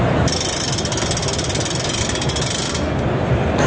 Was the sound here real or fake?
real